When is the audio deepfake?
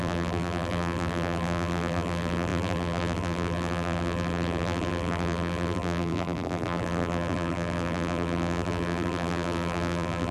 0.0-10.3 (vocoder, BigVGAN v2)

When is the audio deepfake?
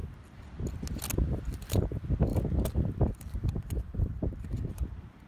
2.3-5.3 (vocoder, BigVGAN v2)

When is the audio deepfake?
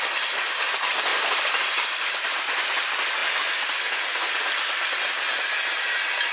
1.1-2.7 (vocoder, BigVGAN v2); 3.2-4.2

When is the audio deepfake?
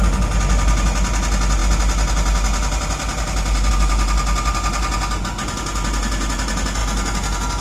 none